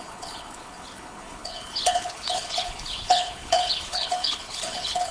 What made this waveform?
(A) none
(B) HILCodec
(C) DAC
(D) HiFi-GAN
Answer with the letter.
B